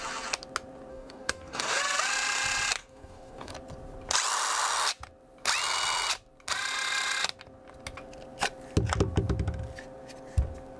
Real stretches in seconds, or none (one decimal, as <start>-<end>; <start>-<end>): 0.0-0.9; 1.8-2.8; 3.5-10.8